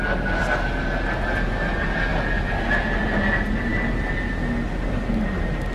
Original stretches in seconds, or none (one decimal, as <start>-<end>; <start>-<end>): 0.0-5.7